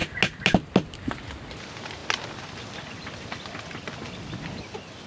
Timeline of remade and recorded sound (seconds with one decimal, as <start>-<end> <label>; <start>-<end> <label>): 0.0-5.1 recorded